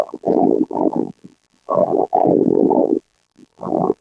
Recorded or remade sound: remade